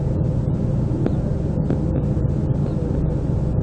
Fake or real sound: real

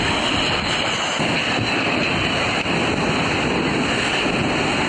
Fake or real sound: real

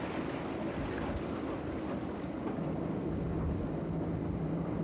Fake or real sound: real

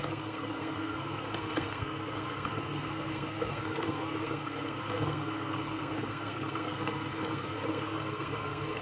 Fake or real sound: fake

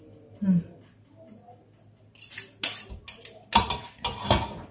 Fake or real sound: real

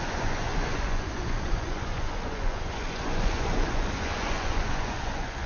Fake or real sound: fake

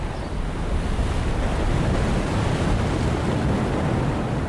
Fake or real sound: real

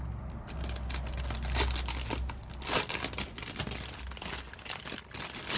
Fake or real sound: real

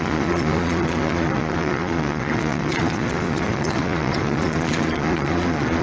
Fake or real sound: fake